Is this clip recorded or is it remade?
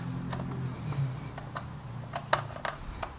recorded